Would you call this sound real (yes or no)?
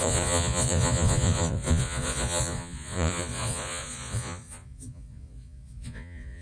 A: no